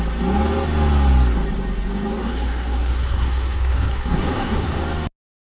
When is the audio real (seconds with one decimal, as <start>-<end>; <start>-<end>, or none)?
0.0-2.2; 4.8-5.5